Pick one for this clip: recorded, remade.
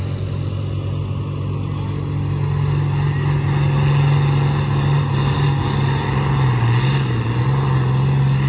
recorded